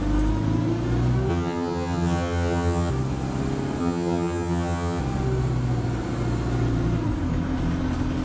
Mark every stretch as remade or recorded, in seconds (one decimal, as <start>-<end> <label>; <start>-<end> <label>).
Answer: 0.0-1.3 recorded; 1.3-2.9 remade; 2.9-3.8 recorded; 3.8-5.0 remade; 5.0-8.2 recorded